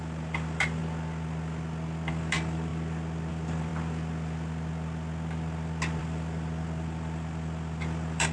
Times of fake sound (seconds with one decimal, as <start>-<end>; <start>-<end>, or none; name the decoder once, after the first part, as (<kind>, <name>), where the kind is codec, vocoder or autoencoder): 0.0-0.8 (vocoder, BigVGAN v2); 2.1-2.7; 3.3-3.7; 6.0-8.3